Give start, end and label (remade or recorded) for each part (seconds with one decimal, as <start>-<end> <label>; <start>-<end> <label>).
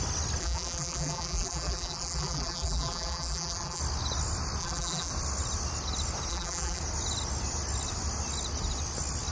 0.0-0.4 recorded; 0.4-3.8 remade; 3.8-4.6 recorded; 4.6-5.1 remade; 5.1-6.3 recorded; 6.3-6.8 remade; 6.8-9.3 recorded